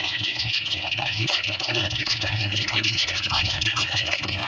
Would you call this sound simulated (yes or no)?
yes